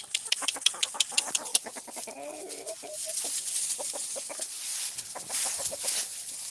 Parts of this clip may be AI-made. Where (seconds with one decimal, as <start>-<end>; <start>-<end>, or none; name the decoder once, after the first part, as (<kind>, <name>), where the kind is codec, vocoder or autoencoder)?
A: none